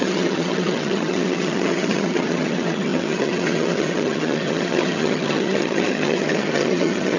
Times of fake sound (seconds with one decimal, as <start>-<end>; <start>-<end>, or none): 0.0-7.2